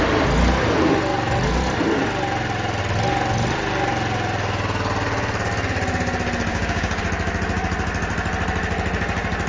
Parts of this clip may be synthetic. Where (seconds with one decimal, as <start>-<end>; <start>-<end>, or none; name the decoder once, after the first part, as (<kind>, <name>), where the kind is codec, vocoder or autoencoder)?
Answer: 6.5-7.0 (codec, DAC)